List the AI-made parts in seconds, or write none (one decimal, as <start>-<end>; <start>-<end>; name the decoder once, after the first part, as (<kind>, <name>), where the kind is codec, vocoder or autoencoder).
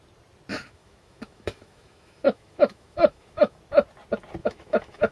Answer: 0.5-3.6 (autoencoder, DAC-VAE); 4.4-5.1